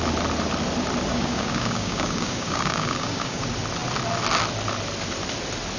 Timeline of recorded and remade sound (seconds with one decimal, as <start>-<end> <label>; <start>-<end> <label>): 0.0-1.1 recorded; 1.1-3.4 remade; 3.4-5.8 recorded